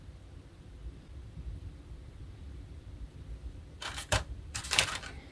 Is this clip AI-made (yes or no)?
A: yes